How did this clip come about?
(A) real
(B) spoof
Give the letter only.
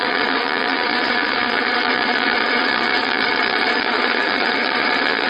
B